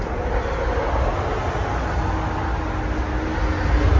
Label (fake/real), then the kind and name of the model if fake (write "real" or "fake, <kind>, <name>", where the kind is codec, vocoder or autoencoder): real